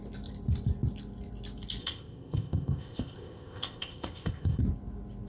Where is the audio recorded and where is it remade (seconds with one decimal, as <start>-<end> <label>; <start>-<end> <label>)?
0.0-1.8 recorded; 1.8-4.6 remade; 4.6-5.3 recorded